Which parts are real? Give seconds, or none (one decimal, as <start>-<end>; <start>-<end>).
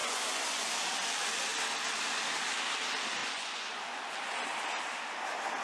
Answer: 0.7-3.2; 4.0-5.6